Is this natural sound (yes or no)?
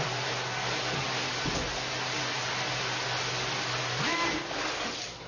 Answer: yes